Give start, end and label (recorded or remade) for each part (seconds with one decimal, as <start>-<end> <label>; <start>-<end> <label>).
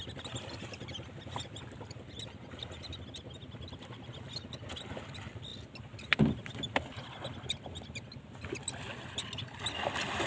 0.0-10.3 recorded